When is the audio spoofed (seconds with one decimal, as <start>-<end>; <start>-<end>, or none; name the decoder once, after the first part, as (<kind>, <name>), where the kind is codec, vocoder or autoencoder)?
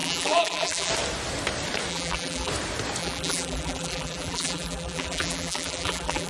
0.0-0.9 (vocoder, BigVGAN v2); 1.9-2.5; 3.0-6.3